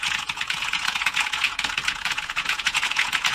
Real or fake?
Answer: fake